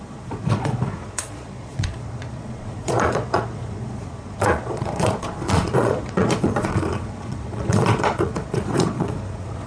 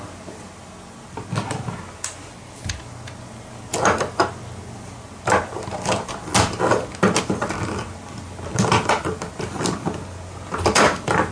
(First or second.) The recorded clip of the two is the second